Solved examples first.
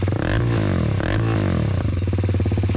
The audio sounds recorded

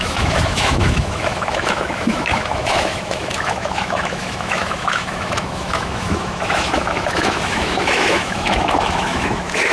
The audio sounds remade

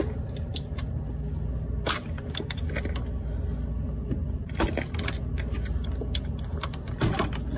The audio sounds recorded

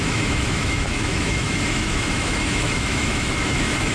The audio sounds remade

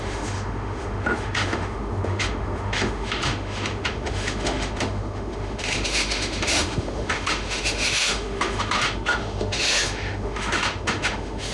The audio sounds remade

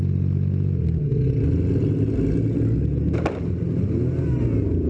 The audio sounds recorded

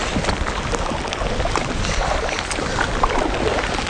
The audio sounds recorded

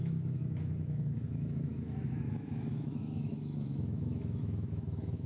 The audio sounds remade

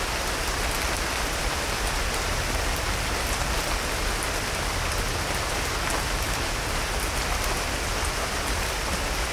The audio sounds recorded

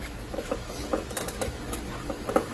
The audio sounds remade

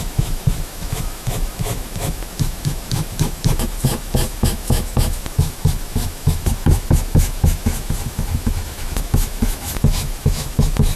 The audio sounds remade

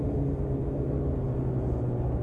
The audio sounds recorded